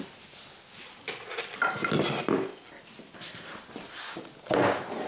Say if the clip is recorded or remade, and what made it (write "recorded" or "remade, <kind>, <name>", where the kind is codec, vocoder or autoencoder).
recorded